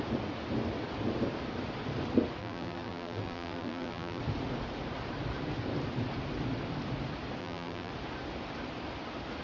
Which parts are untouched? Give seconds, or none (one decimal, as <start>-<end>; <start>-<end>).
0.0-2.4; 4.2-7.4; 7.9-9.4